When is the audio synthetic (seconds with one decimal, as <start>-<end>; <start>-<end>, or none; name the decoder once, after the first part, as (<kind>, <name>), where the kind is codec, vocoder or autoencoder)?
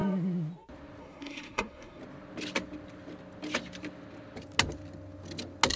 1.0-2.0 (codec, SNAC)